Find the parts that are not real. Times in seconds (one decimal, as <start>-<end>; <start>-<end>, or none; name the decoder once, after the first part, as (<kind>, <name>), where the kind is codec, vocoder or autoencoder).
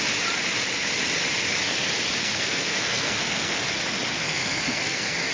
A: 2.2-3.6 (codec, SNAC); 4.2-5.3